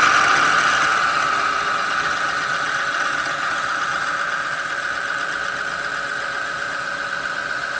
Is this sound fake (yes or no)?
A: no